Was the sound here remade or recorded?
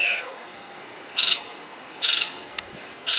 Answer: remade